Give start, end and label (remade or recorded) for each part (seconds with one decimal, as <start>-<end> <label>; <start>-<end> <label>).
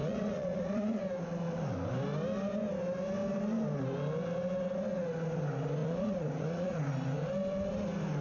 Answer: 0.0-1.0 remade; 1.0-5.8 recorded; 5.8-6.8 remade; 6.8-8.2 recorded